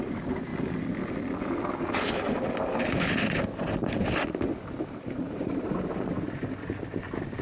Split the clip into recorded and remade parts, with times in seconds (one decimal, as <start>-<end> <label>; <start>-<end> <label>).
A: 0.0-0.5 remade; 0.5-4.7 recorded; 4.7-6.1 remade; 6.1-6.8 recorded; 6.8-7.4 remade